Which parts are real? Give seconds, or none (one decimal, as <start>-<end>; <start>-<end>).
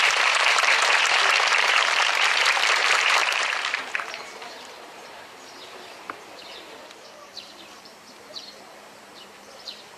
none